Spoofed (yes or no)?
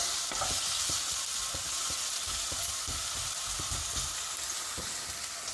no